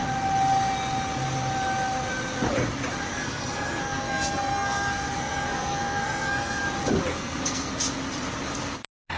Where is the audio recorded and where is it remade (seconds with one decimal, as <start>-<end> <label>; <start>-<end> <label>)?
0.0-3.1 recorded; 3.1-6.6 remade; 6.6-7.1 recorded; 7.1-7.7 remade; 7.7-9.2 recorded